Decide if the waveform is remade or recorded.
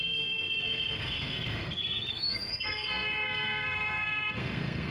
remade